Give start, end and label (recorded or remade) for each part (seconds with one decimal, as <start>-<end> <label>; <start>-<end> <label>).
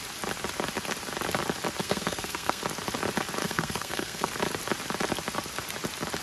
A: 0.0-1.8 recorded; 1.8-2.6 remade; 2.6-3.4 recorded; 3.4-4.3 remade; 4.3-6.2 recorded